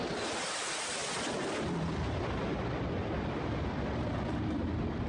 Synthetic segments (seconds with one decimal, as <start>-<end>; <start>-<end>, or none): none